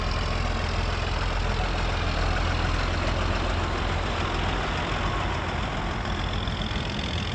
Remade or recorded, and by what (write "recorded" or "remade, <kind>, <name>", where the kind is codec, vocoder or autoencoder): recorded